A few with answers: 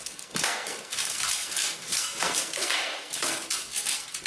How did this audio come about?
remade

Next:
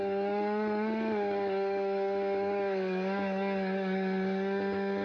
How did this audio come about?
remade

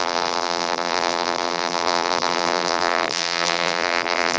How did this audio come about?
remade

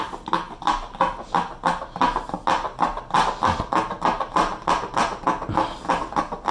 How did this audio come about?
recorded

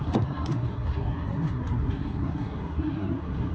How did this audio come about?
remade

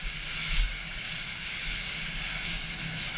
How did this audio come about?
remade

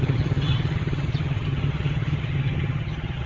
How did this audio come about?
remade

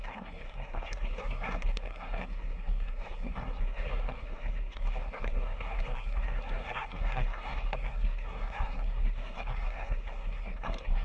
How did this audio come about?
remade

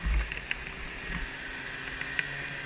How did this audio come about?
recorded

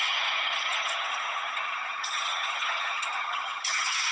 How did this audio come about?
remade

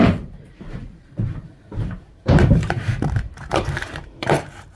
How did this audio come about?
remade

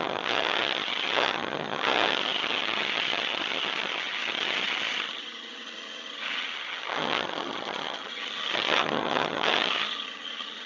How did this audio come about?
remade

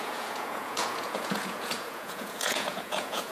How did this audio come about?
remade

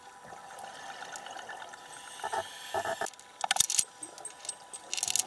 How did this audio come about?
recorded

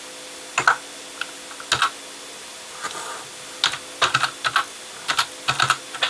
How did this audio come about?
recorded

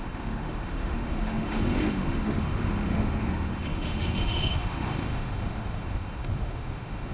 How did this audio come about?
remade